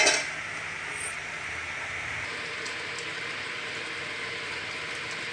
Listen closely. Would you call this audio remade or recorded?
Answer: recorded